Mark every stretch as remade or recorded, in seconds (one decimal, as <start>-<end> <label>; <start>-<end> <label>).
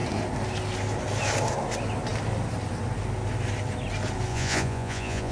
0.0-4.3 recorded; 4.3-5.3 remade